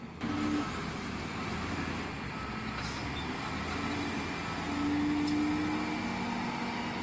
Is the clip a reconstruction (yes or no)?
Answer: no